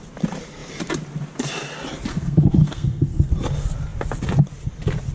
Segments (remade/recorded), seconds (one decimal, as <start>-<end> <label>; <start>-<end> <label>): 0.0-2.1 recorded; 2.1-3.3 remade; 3.3-5.1 recorded